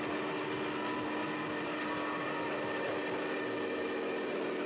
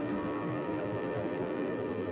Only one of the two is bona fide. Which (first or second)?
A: first